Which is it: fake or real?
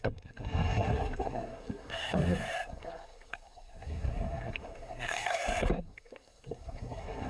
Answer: fake